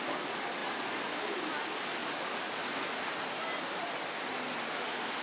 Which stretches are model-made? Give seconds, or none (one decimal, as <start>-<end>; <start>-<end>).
none